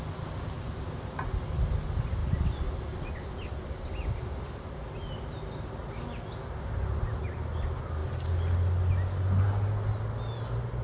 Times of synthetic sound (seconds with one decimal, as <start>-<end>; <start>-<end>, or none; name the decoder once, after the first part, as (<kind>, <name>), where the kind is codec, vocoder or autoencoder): none